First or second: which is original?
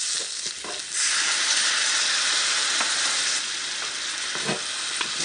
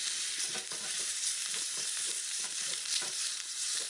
first